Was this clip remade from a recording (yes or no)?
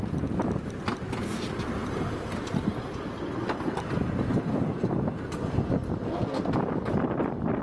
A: no